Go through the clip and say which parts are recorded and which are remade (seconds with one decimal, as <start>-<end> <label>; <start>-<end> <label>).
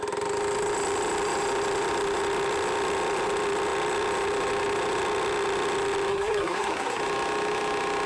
0.0-6.1 recorded; 6.1-7.0 remade; 7.0-8.1 recorded